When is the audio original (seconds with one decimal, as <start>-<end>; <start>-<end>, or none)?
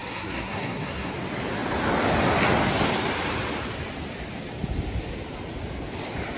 1.1-6.4